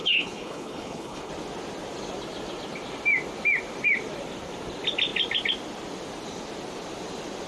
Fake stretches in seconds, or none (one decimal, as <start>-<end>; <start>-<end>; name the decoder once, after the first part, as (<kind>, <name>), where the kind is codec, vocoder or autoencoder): 0.0-1.3 (codec, HILCodec)